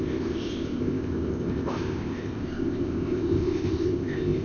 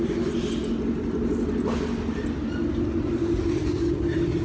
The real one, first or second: second